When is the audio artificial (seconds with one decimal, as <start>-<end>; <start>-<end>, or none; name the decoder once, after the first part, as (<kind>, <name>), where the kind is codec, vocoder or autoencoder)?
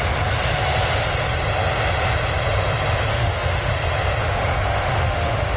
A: 3.1-3.7 (autoencoder, DAC-VAE); 4.2-5.6